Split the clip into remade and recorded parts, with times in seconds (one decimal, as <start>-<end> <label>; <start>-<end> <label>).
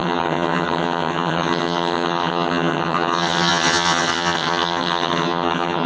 0.0-5.9 remade